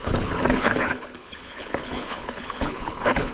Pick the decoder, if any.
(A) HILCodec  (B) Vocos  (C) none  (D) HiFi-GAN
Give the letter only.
A